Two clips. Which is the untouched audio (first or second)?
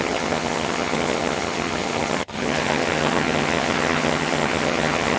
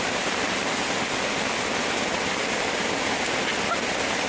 second